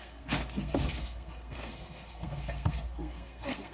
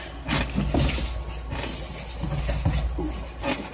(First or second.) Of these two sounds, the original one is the second